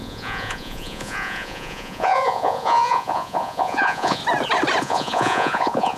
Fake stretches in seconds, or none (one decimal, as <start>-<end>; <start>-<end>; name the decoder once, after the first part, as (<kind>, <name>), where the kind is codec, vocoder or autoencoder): 0.0-4.2 (vocoder, Vocos); 4.8-6.0